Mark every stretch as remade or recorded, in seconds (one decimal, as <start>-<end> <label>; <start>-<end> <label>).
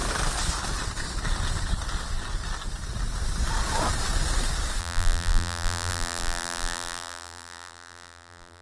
0.0-4.8 recorded; 4.8-8.6 remade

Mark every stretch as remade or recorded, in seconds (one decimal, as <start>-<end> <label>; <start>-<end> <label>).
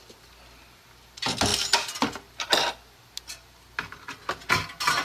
0.0-5.0 recorded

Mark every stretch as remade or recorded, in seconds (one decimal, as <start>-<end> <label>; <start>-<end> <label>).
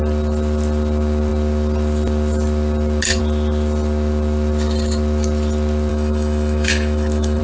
0.0-5.9 recorded; 5.9-7.4 remade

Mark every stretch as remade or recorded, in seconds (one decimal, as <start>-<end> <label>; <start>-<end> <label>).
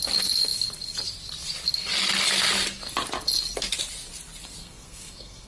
0.0-4.6 recorded; 4.6-5.5 remade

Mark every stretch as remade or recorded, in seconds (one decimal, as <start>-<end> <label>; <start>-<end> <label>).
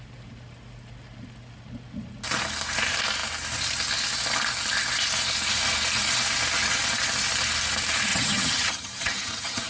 0.0-8.1 recorded; 8.1-9.7 remade